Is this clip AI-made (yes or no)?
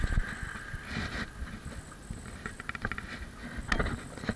no